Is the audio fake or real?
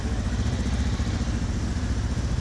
real